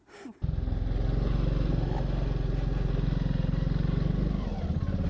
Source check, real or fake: real